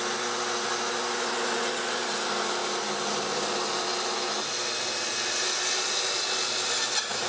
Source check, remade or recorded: recorded